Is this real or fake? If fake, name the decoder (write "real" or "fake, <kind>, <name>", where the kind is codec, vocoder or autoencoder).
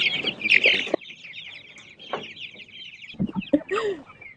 real